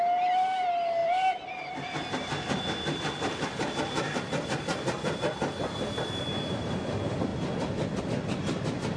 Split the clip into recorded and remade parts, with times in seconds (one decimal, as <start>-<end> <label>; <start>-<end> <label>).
0.0-9.0 recorded